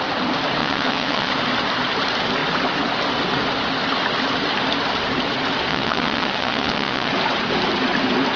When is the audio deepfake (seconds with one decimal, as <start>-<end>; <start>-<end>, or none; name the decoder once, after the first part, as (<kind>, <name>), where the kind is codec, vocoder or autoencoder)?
0.6-1.3 (vocoder, WaveNeXt); 5.7-7.1